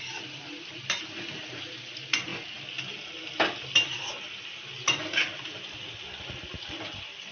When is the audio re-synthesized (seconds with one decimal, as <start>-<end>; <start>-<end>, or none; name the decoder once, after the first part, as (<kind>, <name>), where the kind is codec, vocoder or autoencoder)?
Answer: 0.0-2.3 (vocoder, BigVGAN v2); 6.7-7.3